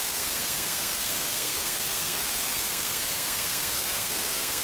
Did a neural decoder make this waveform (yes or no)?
yes